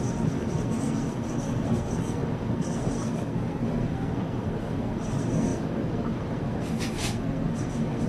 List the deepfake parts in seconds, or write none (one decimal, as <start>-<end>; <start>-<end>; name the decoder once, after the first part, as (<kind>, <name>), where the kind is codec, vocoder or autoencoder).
0.0-8.1 (codec, SNAC)